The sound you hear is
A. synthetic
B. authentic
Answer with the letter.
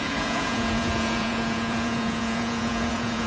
A